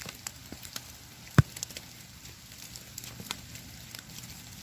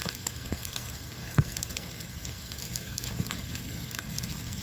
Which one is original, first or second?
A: first